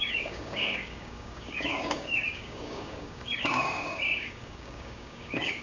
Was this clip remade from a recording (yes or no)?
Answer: yes